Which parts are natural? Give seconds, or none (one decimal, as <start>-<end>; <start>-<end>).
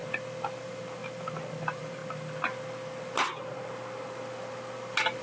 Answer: 0.0-0.6; 1.0-1.6; 2.0-5.2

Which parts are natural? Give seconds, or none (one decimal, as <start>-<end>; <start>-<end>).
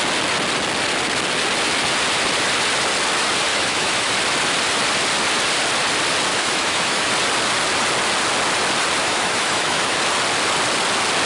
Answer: 0.0-3.5; 4.1-6.3; 7.1-9.0; 10.0-11.3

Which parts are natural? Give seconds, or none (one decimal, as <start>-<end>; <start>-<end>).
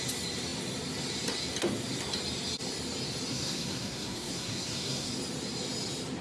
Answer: 0.0-3.3; 5.1-6.2